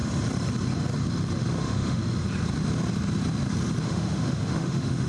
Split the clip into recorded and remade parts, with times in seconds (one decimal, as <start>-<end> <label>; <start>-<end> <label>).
0.0-1.6 recorded; 1.6-2.0 remade; 2.0-3.8 recorded; 3.8-5.1 remade